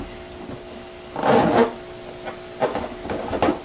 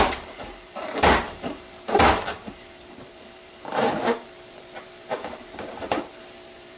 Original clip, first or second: first